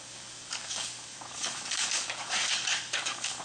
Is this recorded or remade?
remade